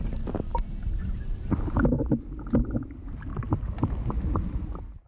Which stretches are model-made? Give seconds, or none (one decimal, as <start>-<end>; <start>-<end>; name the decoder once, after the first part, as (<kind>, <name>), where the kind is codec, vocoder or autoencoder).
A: none